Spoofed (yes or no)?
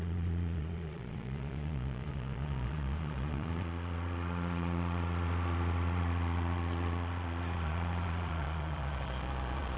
yes